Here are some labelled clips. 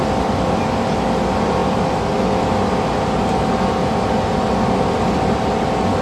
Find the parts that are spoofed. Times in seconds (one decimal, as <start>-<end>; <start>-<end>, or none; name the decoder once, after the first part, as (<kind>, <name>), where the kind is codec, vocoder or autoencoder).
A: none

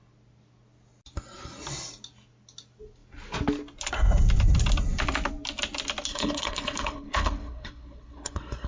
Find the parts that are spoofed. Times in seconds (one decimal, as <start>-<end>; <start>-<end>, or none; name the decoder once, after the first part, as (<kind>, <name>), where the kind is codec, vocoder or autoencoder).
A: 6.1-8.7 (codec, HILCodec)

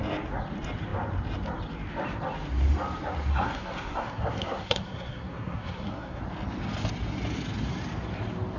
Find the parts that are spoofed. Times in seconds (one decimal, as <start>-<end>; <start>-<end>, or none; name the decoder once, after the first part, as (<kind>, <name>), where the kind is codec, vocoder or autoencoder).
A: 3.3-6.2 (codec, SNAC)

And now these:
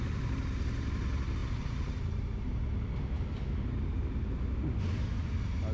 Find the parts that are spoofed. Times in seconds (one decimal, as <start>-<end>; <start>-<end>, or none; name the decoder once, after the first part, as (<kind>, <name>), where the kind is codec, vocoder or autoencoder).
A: none

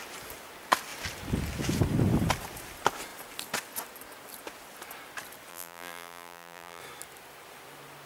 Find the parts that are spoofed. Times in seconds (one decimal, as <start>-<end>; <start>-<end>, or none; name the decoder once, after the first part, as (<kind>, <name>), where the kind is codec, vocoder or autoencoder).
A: 5.5-6.8 (vocoder, BigVGAN v2)